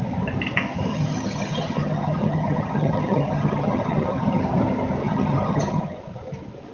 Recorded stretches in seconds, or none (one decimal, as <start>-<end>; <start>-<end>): 0.0-0.9; 4.4-5.0; 6.0-6.7